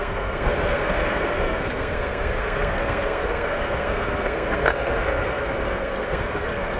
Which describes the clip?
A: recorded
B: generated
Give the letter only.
B